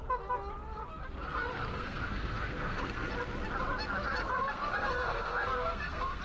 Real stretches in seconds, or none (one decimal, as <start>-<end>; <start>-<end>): 0.0-1.7; 3.1-4.2